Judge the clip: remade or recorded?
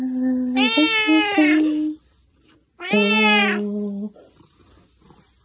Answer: recorded